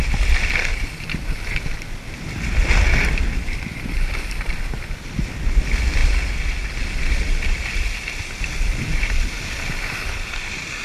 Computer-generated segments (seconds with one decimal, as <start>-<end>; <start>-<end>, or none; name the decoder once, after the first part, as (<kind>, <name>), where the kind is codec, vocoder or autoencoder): none